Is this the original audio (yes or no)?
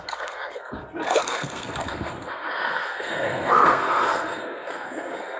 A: no